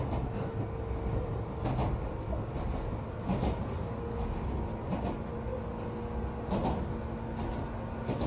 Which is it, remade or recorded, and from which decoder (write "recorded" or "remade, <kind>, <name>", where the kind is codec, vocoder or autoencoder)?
recorded